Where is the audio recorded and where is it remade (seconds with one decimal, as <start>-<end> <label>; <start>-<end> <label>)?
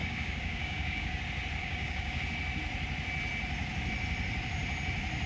0.0-1.2 remade; 1.2-1.6 recorded; 1.6-2.2 remade; 2.2-5.3 recorded